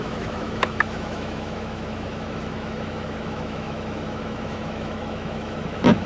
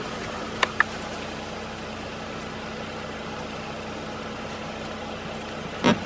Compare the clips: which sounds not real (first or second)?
first